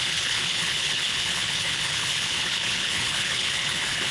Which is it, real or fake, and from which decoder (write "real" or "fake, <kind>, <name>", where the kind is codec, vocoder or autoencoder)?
fake, codec, HILCodec